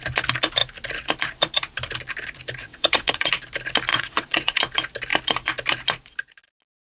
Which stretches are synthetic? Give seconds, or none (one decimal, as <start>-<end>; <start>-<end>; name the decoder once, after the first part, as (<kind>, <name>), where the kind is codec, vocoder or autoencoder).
2.6-3.3 (vocoder, WaveNeXt); 3.9-4.6